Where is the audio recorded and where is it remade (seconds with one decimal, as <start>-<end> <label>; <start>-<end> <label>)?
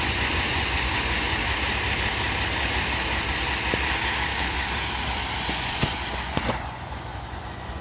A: 0.0-1.3 remade; 1.3-5.4 recorded; 5.4-7.8 remade